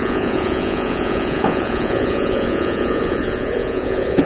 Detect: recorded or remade remade